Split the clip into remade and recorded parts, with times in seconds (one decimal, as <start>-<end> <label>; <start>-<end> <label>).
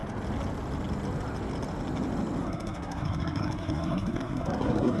0.0-2.4 recorded; 2.4-5.0 remade